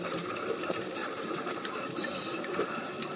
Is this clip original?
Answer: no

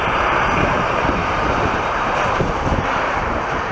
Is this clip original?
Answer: no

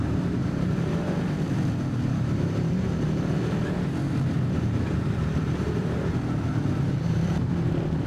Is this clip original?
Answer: no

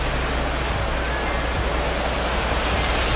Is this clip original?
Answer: yes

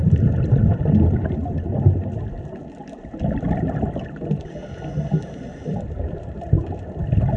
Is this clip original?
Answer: no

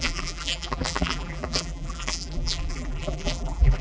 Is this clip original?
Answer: no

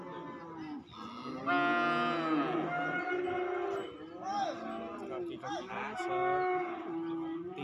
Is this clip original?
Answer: yes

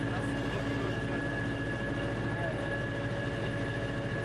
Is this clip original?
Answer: yes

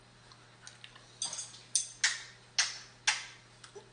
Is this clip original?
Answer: yes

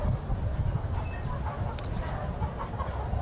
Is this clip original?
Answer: yes